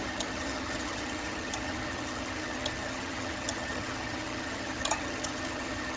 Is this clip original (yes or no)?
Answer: no